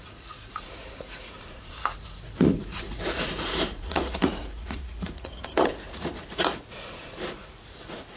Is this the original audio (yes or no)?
no